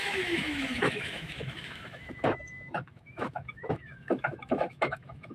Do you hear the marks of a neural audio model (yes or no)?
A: yes